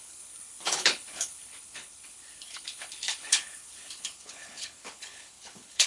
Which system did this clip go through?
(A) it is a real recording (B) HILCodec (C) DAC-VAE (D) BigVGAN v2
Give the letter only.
B